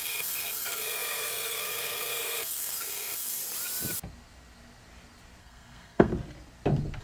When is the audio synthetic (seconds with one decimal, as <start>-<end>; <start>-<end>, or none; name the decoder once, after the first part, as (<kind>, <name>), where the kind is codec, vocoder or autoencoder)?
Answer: 0.0-3.4 (codec, SNAC); 5.4-6.1